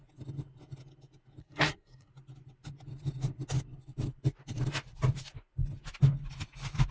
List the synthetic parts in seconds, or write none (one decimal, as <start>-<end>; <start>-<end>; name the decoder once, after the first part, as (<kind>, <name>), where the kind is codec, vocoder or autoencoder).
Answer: 1.4-2.1 (codec, SNAC)